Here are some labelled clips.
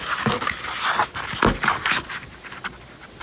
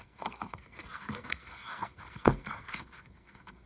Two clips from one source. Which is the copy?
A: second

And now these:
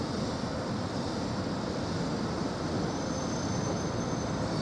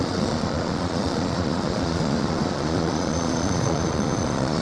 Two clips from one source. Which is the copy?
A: second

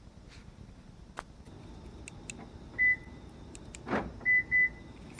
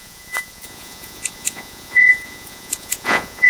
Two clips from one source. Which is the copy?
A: second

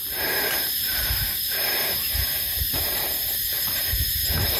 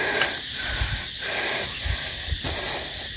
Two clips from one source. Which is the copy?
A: first